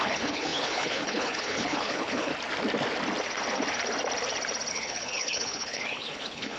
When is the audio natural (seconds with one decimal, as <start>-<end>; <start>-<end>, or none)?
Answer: 2.3-4.7